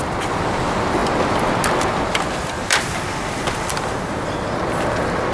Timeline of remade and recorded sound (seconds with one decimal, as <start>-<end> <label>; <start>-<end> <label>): 0.0-5.3 recorded